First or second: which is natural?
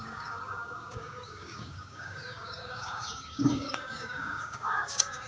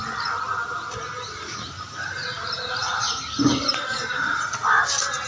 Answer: second